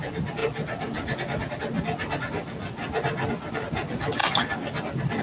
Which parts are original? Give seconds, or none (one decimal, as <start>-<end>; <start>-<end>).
0.0-5.2